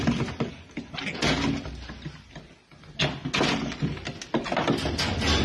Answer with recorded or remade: recorded